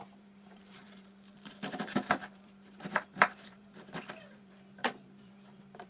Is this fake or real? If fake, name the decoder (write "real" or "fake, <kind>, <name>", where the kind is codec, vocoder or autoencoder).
fake, vocoder, BigVGAN v2